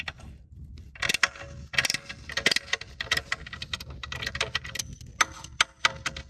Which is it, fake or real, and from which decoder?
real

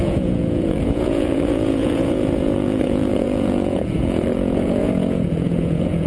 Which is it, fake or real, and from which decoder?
fake, vocoder, Vocos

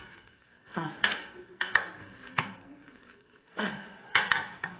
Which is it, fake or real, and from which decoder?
fake, codec, SNAC